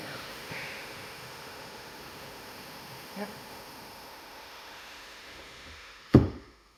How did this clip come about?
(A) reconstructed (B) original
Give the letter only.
A